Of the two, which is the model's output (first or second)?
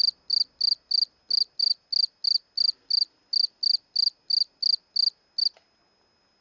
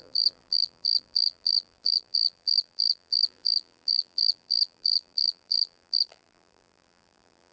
second